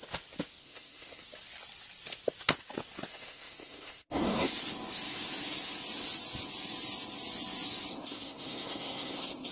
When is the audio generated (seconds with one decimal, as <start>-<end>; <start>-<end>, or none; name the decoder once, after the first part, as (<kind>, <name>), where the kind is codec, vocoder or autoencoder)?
0.6-1.2 (codec, SNAC); 3.1-4.5; 7.9-9.5